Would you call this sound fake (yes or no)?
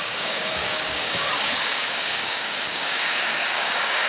yes